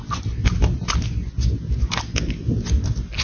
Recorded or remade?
recorded